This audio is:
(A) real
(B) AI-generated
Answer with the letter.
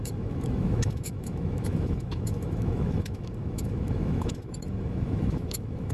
B